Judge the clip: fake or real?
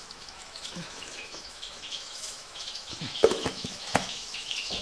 fake